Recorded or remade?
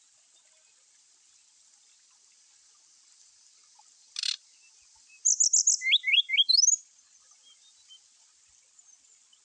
recorded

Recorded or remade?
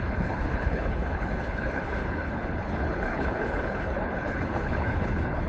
remade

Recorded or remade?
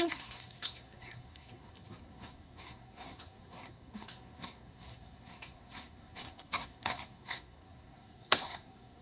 remade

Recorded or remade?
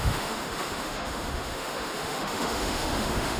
remade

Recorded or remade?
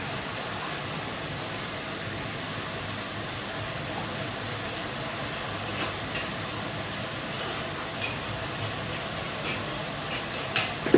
recorded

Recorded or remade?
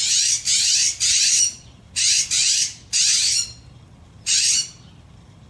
recorded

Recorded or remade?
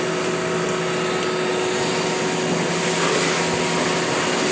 recorded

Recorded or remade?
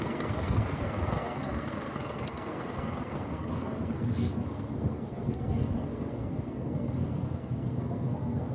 remade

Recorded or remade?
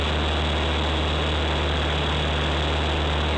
recorded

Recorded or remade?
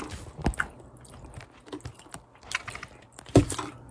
recorded